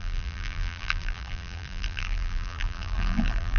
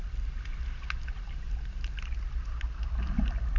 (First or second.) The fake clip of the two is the first